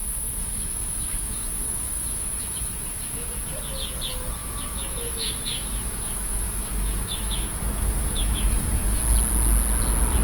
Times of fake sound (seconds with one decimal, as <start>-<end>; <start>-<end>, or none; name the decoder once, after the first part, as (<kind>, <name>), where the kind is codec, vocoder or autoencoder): 0.0-3.6 (autoencoder, DAC-VAE); 4.4-9.0